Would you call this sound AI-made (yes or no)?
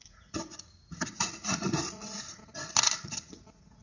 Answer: yes